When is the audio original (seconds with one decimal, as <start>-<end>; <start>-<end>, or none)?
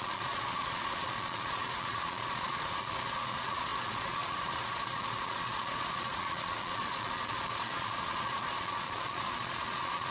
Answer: none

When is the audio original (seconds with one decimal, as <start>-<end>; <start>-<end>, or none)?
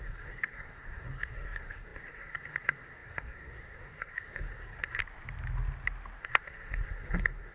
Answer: 5.0-6.2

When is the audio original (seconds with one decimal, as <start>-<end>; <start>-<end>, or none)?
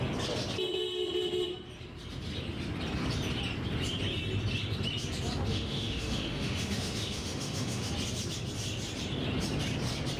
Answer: 0.0-5.5; 7.9-10.2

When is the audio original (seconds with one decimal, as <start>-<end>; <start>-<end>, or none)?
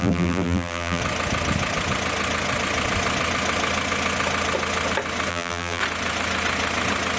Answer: 1.0-5.3; 5.8-7.2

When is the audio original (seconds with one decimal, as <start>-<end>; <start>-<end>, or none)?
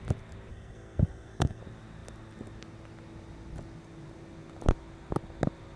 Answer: 0.0-0.5; 1.6-5.8